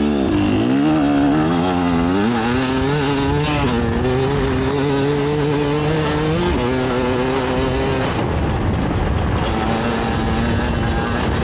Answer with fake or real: real